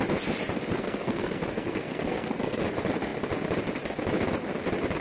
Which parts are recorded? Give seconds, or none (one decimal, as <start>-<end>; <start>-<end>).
0.0-0.7; 2.6-5.0